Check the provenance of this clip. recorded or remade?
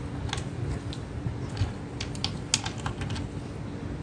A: recorded